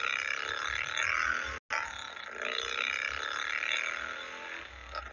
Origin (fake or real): real